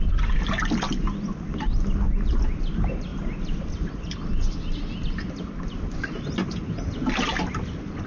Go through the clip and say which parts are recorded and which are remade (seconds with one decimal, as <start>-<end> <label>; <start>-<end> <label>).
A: 0.0-8.1 recorded

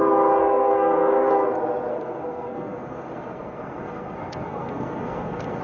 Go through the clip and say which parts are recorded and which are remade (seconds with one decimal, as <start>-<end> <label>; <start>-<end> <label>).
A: 0.0-0.4 recorded; 0.4-1.3 remade; 1.3-1.9 recorded; 1.9-5.6 remade

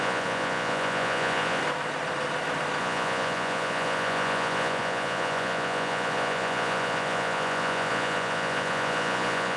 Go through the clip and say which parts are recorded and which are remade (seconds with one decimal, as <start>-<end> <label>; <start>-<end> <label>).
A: 0.0-1.6 remade; 1.6-2.8 recorded; 2.8-9.6 remade

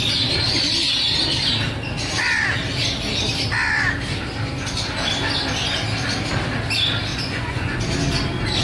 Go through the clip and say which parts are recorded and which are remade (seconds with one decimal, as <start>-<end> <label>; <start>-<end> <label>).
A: 0.0-7.1 recorded; 7.1-7.8 remade; 7.8-8.6 recorded

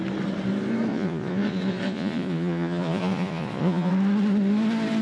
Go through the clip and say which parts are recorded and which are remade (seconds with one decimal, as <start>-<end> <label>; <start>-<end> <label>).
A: 0.0-0.9 recorded; 0.9-3.9 remade; 3.9-5.0 recorded